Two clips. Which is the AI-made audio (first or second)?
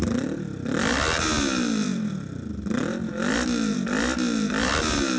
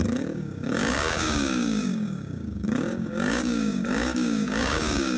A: second